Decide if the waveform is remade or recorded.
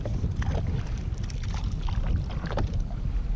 recorded